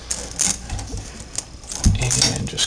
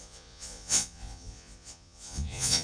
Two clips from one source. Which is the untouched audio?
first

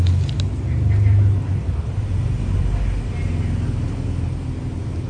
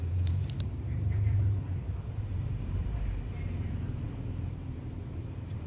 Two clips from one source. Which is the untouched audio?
first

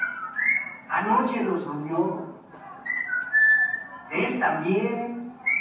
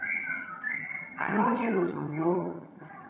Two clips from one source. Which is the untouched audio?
first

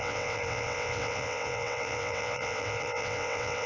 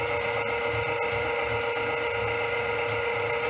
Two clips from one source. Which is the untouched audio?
second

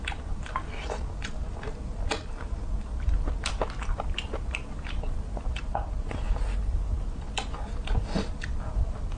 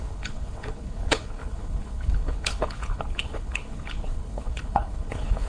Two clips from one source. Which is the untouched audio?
first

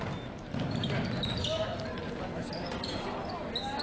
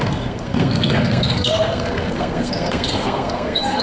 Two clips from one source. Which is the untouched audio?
first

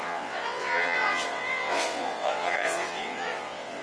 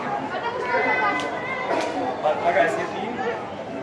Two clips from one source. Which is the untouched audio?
second